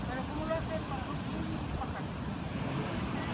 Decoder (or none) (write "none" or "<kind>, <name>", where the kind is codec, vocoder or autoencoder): none